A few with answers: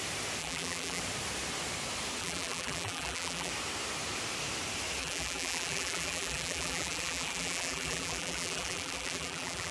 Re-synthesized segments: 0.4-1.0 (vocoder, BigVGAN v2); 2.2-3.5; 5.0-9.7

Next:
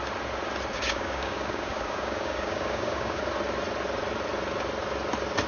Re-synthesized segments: 0.7-3.2 (codec, DAC)

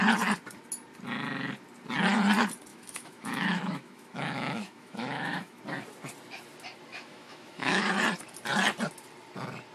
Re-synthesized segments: 2.7-5.6 (autoencoder, DAC-VAE); 6.9-7.9

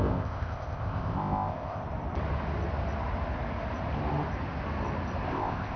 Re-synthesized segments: 0.0-1.8 (codec, ZipCodec); 5.3-5.8